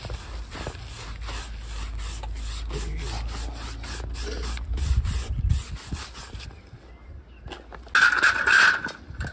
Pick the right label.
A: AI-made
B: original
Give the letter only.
B